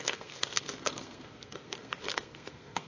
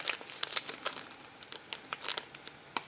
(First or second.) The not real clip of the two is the first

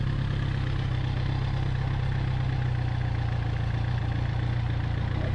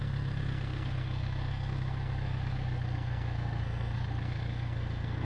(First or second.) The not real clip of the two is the second